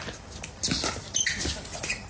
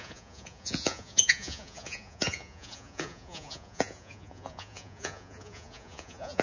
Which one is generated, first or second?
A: second